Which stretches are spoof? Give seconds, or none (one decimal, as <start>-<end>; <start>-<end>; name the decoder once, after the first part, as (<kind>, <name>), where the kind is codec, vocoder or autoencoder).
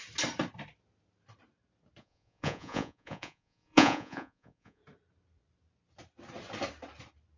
2.0-4.8 (vocoder, Vocos)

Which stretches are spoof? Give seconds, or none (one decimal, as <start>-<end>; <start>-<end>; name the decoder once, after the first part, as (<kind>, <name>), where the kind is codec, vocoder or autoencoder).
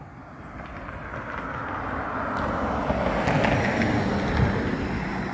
none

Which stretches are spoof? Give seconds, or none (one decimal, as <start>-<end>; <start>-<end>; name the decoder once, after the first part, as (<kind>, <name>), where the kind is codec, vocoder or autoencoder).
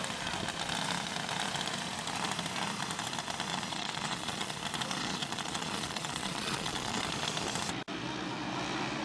3.5-4.6 (vocoder, Vocos); 5.0-7.0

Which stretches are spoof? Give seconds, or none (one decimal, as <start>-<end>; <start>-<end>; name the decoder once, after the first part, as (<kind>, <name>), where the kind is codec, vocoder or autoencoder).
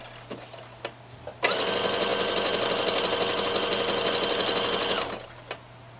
none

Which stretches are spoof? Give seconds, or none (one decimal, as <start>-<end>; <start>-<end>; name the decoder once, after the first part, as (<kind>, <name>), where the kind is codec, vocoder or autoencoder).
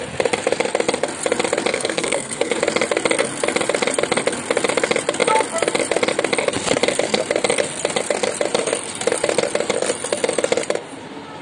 1.7-2.6 (codec, SNAC)